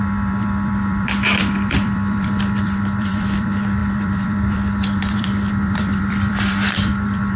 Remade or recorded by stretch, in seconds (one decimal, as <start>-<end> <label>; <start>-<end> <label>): 0.0-7.4 remade